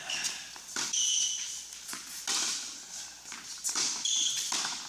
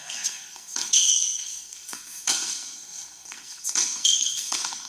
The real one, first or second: first